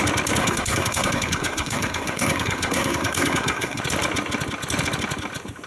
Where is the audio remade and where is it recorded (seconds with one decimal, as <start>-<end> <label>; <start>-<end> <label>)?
0.0-0.4 recorded; 0.4-3.8 remade; 3.8-5.7 recorded